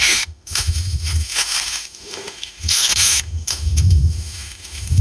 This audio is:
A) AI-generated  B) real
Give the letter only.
A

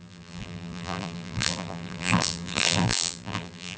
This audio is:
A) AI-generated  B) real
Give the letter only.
A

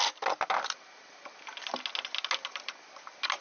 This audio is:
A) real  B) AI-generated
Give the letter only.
A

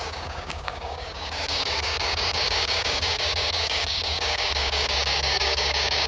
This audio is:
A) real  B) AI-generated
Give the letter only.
B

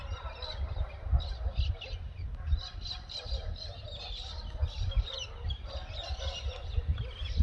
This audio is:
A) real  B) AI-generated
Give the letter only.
A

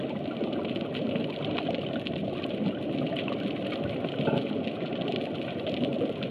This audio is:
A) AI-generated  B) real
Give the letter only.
B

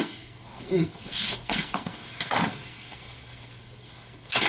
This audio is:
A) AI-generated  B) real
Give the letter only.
A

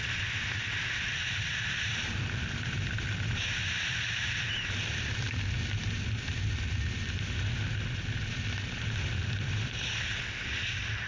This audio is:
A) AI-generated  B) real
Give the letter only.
B